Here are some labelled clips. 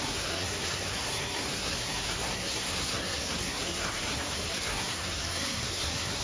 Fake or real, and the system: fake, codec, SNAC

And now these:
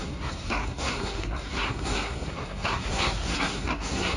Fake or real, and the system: fake, codec, SNAC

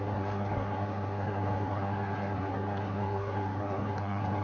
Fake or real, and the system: fake, codec, SNAC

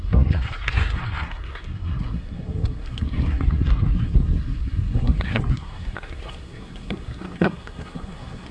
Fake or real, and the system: fake, codec, SNAC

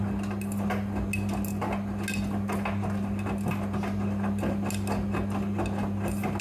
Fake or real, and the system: real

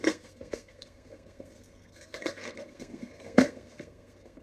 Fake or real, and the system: fake, codec, SNAC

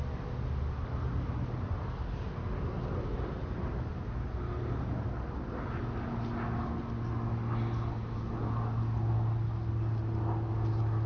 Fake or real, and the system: real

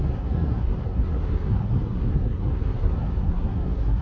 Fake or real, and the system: fake, codec, SNAC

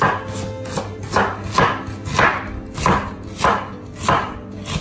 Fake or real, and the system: real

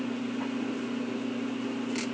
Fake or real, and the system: real